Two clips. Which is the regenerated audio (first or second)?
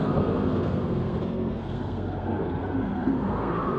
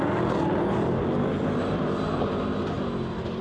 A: first